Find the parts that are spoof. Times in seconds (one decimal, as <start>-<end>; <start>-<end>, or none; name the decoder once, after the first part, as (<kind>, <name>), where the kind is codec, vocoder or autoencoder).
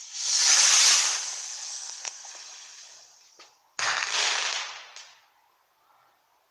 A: 1.2-2.3 (codec, SNAC)